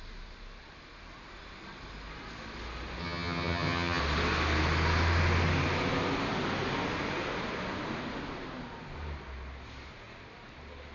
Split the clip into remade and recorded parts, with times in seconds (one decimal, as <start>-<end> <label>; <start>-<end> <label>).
0.0-3.0 recorded; 3.0-4.0 remade; 4.0-10.9 recorded